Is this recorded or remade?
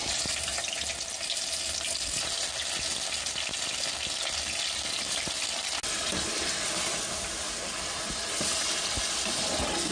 recorded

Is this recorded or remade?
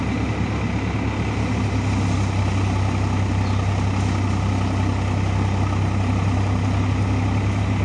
recorded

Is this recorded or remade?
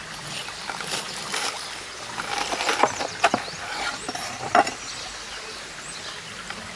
recorded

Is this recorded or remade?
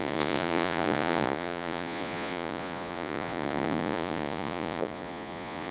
remade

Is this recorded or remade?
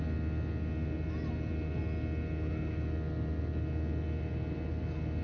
recorded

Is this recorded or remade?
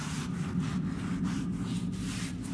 recorded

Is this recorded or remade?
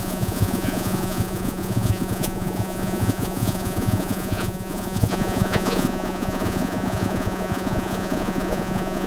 remade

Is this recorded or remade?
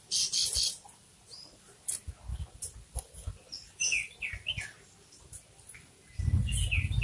recorded